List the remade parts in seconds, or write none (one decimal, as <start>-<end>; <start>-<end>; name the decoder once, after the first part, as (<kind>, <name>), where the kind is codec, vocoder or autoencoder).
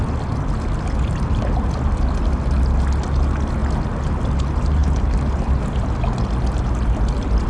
none